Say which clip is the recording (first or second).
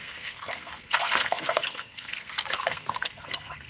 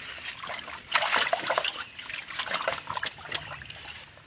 second